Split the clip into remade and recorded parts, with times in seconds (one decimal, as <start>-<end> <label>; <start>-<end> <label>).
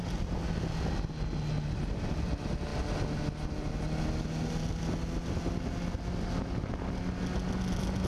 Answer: 0.0-8.1 recorded